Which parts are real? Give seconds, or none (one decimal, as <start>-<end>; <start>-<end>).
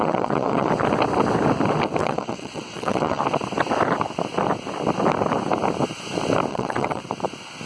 0.7-2.0; 3.2-6.5; 7.0-7.7